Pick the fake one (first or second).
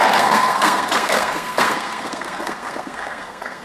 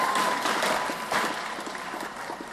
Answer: first